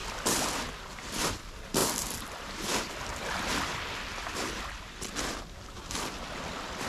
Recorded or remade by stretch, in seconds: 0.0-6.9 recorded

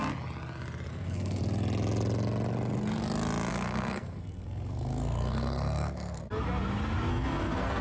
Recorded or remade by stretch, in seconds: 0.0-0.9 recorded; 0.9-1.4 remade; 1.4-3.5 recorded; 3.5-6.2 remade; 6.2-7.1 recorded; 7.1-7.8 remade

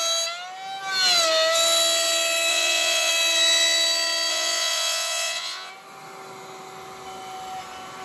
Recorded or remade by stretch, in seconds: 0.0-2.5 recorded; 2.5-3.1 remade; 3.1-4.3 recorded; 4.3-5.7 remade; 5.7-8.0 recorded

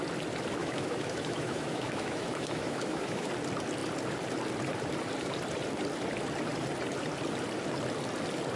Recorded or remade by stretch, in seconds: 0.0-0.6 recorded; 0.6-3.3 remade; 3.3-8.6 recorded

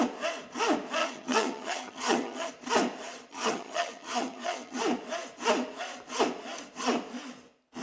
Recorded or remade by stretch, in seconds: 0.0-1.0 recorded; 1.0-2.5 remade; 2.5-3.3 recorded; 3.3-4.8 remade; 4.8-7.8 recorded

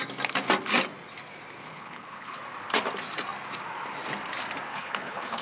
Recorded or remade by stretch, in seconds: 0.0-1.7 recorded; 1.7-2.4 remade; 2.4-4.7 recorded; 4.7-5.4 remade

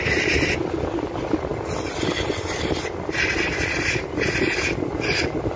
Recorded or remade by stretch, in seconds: 0.0-5.6 recorded